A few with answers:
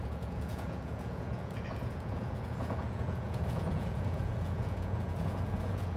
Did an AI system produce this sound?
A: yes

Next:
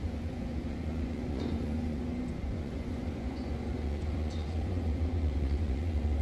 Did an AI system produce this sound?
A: yes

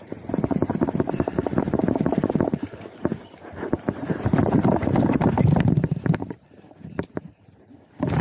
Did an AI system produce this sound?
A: yes